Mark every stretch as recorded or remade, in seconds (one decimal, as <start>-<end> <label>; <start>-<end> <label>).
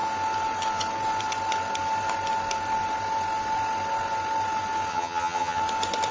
0.0-4.9 recorded; 4.9-5.6 remade; 5.6-6.1 recorded